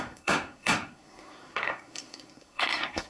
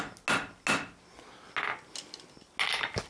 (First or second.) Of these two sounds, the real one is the second